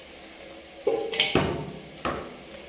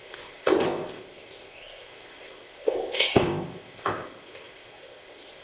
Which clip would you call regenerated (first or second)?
second